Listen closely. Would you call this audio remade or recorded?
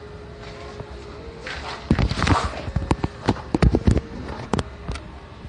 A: recorded